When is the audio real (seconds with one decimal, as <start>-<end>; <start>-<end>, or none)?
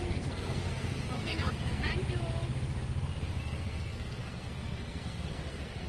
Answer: 1.9-3.4